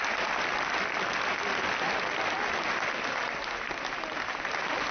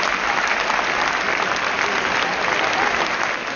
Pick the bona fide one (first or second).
second